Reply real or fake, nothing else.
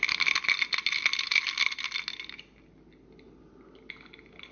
real